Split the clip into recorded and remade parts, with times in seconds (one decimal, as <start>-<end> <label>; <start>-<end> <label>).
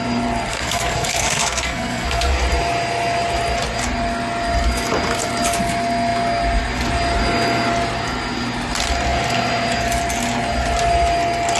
0.0-0.5 recorded; 0.5-2.4 remade; 2.4-11.6 recorded